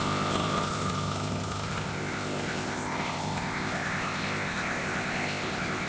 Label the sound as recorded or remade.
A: remade